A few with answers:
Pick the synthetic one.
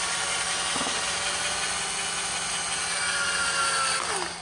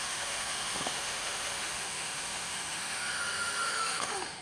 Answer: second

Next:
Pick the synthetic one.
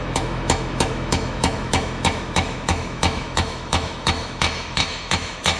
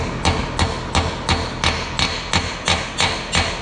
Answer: first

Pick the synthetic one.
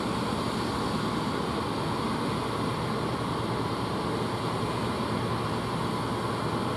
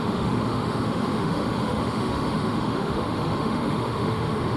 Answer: second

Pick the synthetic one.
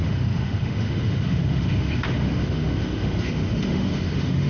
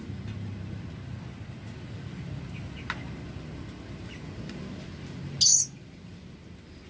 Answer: first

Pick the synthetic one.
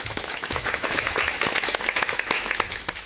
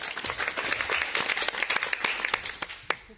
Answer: first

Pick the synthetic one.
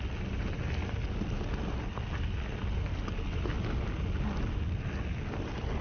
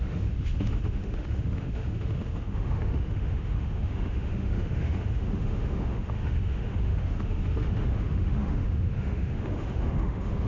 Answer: second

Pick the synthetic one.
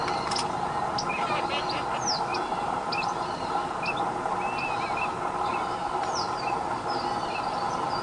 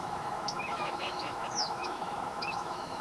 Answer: second